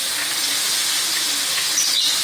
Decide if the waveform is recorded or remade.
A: recorded